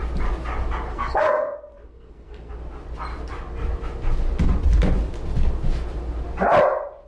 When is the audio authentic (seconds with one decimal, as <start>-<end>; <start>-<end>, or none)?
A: 0.0-0.9; 2.5-7.1